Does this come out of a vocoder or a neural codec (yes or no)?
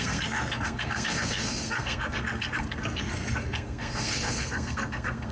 yes